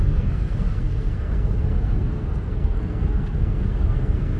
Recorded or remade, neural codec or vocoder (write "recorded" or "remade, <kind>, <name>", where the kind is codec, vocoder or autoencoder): remade, codec, SNAC